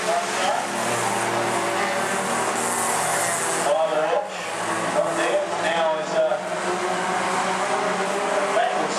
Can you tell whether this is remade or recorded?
recorded